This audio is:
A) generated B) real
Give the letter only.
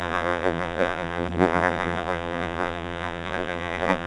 A